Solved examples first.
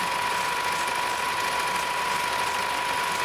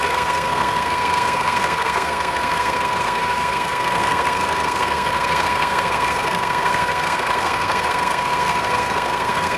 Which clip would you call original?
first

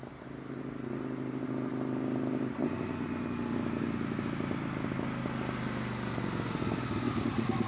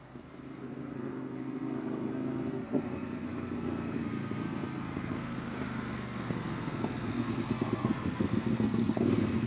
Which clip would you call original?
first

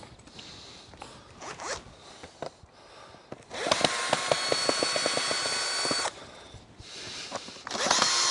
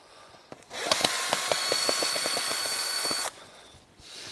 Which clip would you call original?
first